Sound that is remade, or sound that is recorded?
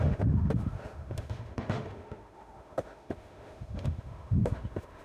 remade